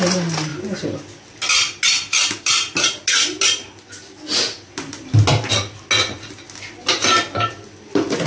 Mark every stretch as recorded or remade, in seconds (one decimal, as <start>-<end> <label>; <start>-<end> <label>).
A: 0.0-8.3 recorded